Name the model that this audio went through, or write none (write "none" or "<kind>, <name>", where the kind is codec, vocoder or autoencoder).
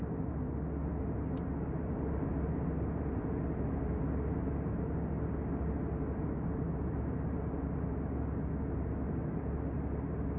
none